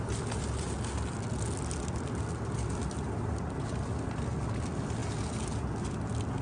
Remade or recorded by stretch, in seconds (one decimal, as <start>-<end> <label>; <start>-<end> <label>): 0.0-6.4 recorded